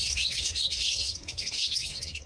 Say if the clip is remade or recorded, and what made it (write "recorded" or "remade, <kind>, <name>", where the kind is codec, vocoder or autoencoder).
remade, codec, SNAC